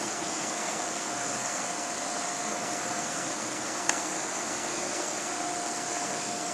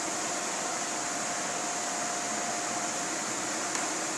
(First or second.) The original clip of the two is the second